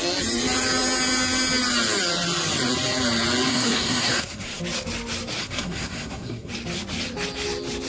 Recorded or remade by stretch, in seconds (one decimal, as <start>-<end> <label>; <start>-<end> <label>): 0.0-3.5 recorded; 3.5-4.6 remade; 4.6-5.4 recorded; 5.4-6.5 remade; 6.5-7.9 recorded